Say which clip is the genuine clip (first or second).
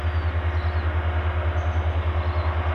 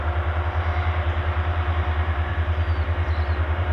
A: first